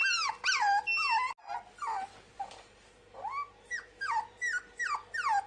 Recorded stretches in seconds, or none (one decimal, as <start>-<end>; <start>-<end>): 0.0-5.5